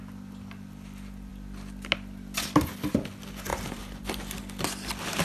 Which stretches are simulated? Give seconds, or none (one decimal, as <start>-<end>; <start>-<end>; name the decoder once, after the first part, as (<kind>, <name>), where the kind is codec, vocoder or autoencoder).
3.5-4.4 (vocoder, BigVGAN v2)